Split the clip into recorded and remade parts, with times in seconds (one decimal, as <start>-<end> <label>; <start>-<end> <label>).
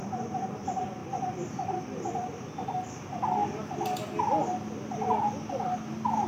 0.0-6.3 recorded